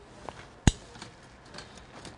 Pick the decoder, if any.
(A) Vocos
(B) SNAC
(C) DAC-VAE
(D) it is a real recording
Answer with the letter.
D